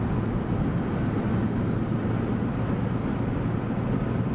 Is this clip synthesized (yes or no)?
no